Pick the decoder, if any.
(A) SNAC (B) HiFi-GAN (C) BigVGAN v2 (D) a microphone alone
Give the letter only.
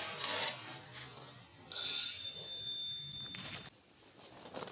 D